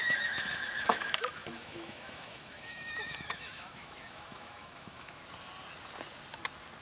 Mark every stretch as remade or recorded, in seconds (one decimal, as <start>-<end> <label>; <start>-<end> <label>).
0.0-5.2 remade; 5.2-6.8 recorded